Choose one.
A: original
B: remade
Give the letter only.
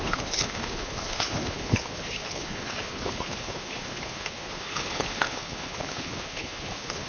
B